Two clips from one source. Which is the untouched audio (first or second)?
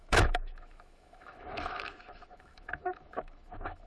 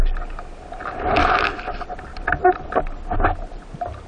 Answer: second